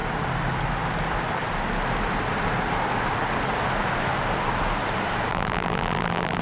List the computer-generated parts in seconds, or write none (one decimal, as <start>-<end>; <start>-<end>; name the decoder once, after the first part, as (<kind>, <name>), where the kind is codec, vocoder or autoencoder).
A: 5.3-6.4 (vocoder, BigVGAN v2)